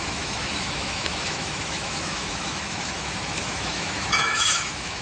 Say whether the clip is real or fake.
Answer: fake